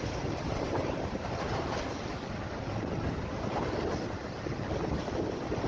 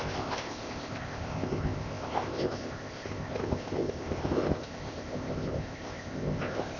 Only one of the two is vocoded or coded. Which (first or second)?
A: second